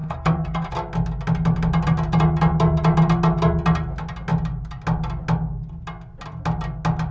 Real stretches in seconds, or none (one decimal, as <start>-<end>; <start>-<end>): 0.7-7.1